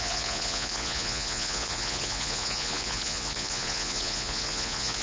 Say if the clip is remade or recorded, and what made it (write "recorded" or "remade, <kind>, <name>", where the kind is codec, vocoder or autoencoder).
remade, vocoder, Vocos